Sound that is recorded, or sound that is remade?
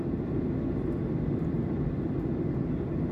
recorded